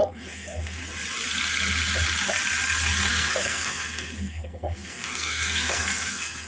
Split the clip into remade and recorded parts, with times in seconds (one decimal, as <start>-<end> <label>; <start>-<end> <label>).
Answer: 0.0-0.8 remade; 0.8-3.1 recorded; 3.1-6.5 remade